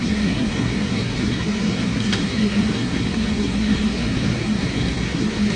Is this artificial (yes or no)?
yes